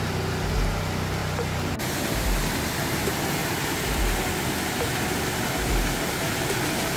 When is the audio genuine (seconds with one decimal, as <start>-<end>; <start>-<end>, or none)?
0.0-1.2; 1.8-7.0